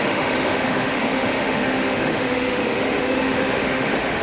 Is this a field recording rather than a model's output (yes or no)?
no